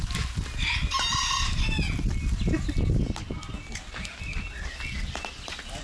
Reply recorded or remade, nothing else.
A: recorded